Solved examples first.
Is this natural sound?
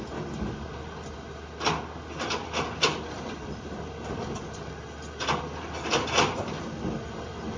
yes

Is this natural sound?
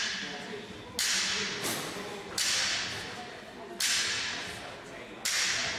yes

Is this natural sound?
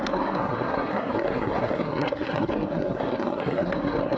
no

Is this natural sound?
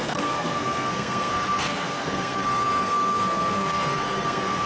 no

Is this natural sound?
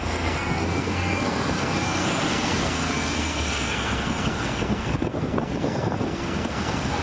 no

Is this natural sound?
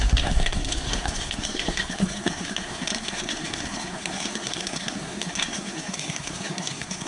no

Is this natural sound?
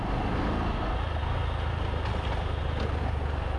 yes